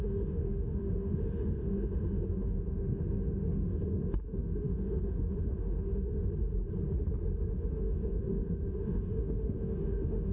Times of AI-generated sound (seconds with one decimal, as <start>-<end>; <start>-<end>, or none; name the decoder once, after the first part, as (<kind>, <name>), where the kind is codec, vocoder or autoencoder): 0.0-6.3 (autoencoder, DAC-VAE); 7.5-10.3